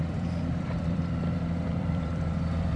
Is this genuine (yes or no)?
no